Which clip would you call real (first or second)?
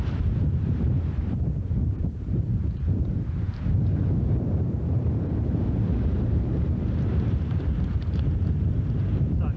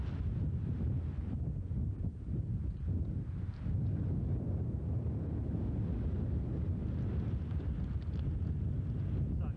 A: second